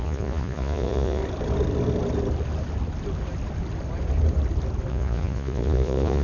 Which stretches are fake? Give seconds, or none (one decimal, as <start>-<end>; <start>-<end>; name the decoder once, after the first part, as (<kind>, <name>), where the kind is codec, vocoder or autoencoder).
0.0-1.2 (vocoder, Vocos); 4.9-6.2